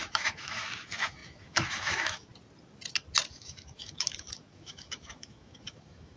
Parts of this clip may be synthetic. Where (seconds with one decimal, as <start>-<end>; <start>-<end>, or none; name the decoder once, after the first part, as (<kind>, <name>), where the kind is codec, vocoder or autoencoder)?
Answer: 0.0-2.3 (autoencoder, DAC-VAE); 3.3-6.2